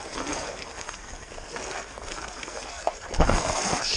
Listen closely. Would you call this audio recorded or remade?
remade